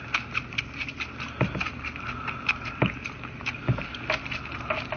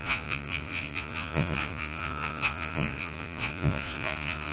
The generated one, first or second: second